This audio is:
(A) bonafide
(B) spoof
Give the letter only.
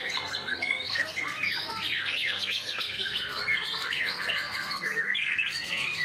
B